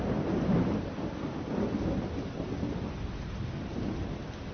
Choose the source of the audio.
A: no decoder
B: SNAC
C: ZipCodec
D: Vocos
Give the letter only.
A